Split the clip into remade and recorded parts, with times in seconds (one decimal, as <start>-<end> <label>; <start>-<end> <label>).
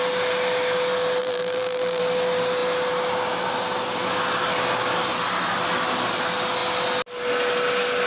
0.0-1.2 recorded; 1.2-2.0 remade; 2.0-8.1 recorded